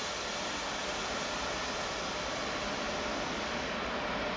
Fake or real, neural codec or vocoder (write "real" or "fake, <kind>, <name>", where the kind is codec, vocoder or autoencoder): real